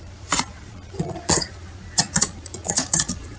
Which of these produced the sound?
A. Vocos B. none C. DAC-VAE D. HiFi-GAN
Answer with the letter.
A